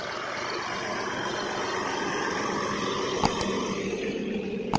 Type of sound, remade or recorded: recorded